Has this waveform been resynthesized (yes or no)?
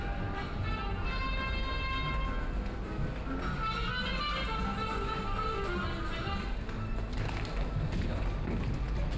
no